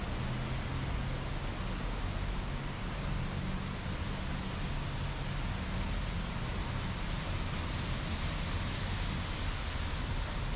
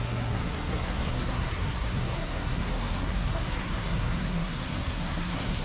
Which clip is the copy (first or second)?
second